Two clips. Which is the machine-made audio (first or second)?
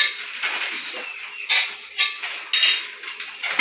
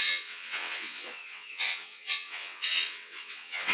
second